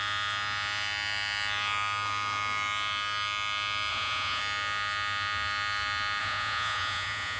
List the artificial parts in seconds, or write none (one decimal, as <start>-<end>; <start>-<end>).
3.9-4.4; 6.2-7.4